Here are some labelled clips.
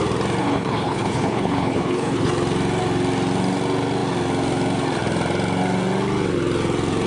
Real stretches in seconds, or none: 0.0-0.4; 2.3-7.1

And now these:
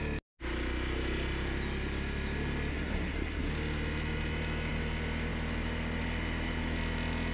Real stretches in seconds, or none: 0.0-2.7; 3.5-7.3

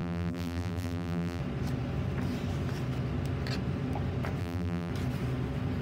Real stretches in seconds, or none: 1.4-4.4; 4.9-5.8